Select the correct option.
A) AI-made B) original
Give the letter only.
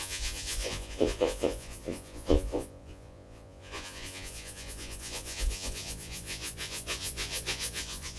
A